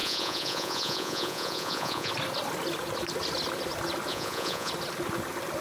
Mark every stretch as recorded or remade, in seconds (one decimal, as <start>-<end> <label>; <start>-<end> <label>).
0.0-2.1 remade; 2.1-4.1 recorded; 4.1-4.7 remade; 4.7-5.6 recorded